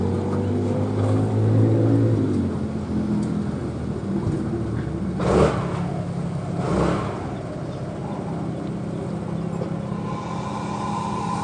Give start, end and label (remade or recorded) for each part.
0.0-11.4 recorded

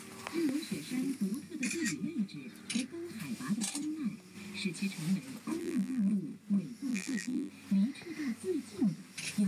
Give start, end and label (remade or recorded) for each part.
0.0-5.6 recorded; 5.6-6.1 remade; 6.1-6.9 recorded; 6.9-7.5 remade; 7.5-9.5 recorded

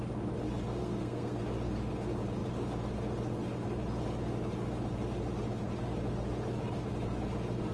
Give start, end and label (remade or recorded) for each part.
0.0-0.8 recorded; 0.8-1.4 remade; 1.4-7.7 recorded